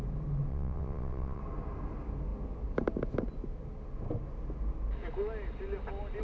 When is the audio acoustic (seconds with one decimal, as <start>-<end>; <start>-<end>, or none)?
0.0-0.5; 1.4-6.2